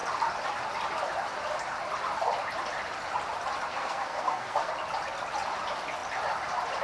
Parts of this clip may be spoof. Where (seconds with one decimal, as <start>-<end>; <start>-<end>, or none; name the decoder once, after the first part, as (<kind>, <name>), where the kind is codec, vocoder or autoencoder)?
3.7-4.7 (codec, SNAC)